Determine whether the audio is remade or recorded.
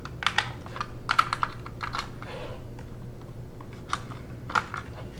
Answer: recorded